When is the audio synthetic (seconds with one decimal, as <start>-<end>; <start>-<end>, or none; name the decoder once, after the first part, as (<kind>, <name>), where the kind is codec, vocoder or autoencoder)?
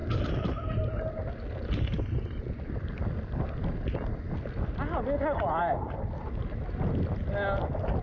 none